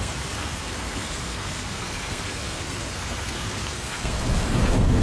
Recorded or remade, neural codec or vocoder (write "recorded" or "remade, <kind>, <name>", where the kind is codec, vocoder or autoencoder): remade, codec, SNAC